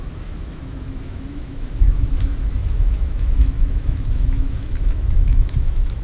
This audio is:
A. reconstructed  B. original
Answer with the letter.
A